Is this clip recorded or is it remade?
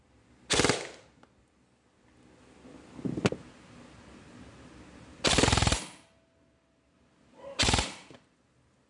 recorded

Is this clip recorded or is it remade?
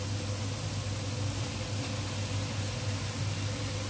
recorded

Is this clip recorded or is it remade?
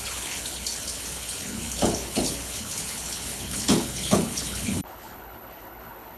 remade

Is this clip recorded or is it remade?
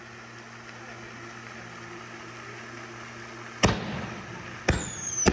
recorded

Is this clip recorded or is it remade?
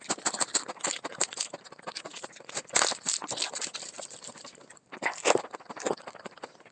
recorded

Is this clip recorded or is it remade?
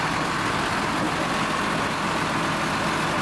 recorded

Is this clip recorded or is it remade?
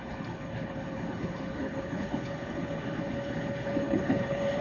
remade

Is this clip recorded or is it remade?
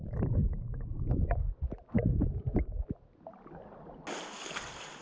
recorded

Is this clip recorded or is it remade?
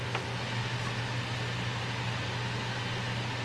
recorded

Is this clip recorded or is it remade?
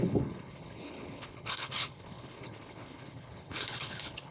remade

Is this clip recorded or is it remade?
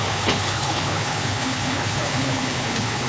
remade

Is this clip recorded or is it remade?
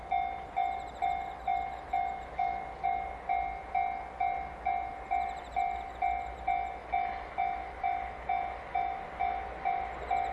recorded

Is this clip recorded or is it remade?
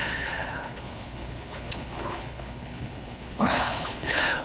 remade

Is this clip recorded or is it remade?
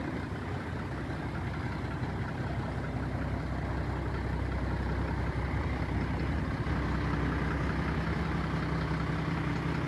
recorded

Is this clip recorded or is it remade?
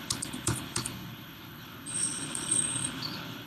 remade